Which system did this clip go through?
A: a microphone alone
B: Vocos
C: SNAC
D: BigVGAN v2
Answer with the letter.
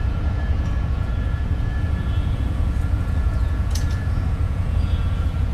B